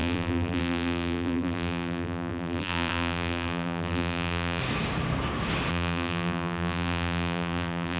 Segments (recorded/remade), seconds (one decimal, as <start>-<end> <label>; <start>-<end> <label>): 0.0-4.6 remade; 4.6-5.7 recorded; 5.7-8.0 remade